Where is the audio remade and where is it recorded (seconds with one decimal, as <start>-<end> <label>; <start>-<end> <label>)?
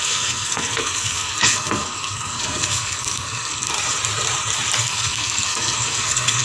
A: 0.0-3.7 remade; 3.7-4.8 recorded; 4.8-6.4 remade